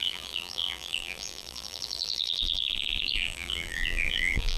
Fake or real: fake